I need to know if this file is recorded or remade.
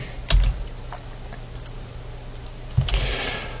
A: recorded